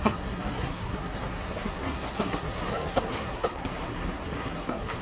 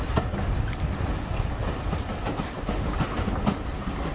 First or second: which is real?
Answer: second